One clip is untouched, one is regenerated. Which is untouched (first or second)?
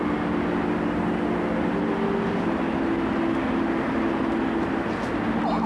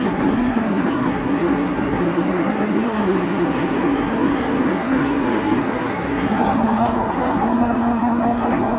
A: first